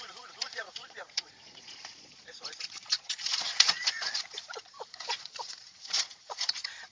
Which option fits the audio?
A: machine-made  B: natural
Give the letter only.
A